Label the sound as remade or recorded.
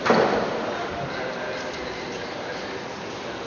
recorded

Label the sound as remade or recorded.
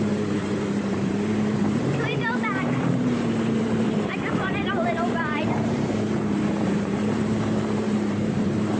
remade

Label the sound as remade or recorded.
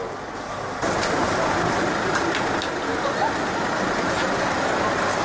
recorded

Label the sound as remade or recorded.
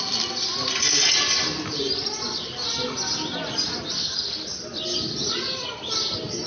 recorded